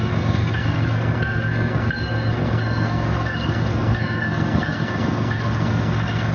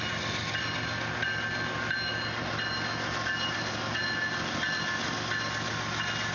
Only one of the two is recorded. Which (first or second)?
second